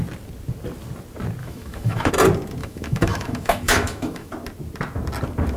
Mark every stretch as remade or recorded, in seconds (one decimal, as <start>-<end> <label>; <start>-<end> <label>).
0.0-1.4 recorded; 1.4-2.1 remade; 2.1-2.6 recorded; 2.6-4.3 remade; 4.3-5.6 recorded